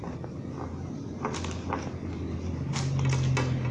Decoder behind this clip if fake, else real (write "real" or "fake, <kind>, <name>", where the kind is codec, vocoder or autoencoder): real